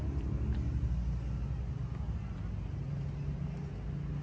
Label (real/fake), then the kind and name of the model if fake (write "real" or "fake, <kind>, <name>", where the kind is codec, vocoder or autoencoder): real